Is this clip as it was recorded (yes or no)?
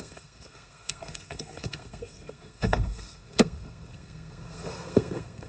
no